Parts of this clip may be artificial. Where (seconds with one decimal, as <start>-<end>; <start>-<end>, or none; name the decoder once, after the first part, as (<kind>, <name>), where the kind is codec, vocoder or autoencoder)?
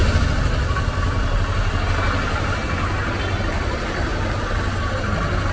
none